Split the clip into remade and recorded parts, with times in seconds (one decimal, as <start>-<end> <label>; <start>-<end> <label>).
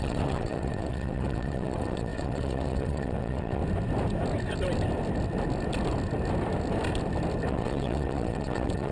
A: 0.0-3.6 remade; 3.6-7.5 recorded; 7.5-8.9 remade